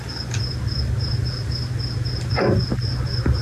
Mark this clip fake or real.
real